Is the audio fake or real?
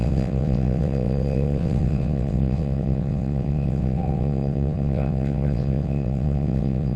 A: fake